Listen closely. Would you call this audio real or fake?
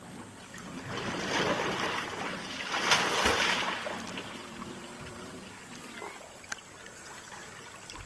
real